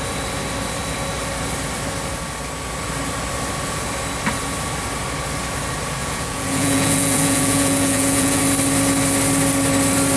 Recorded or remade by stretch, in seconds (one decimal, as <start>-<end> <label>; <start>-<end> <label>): 0.0-6.0 recorded; 6.0-8.4 remade; 8.4-10.2 recorded